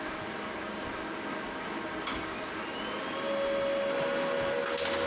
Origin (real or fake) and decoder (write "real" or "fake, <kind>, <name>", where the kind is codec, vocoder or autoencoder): real